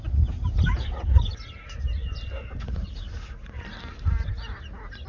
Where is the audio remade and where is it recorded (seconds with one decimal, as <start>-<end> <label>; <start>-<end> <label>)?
0.0-2.0 recorded; 2.0-4.3 remade; 4.3-5.1 recorded